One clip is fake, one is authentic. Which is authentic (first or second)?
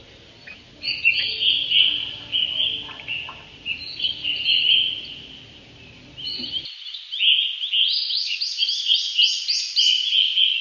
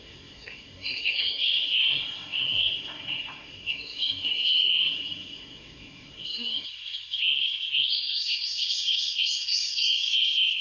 first